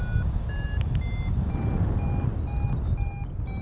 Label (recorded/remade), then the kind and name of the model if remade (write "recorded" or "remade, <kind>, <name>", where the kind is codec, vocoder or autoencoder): recorded